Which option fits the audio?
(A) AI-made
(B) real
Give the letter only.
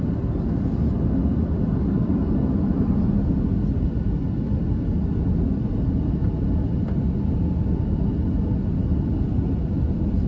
B